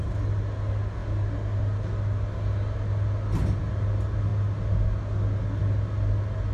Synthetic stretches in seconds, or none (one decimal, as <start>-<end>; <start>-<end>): none